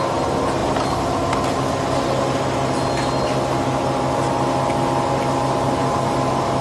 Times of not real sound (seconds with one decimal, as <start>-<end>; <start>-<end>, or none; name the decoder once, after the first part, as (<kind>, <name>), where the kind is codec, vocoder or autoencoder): none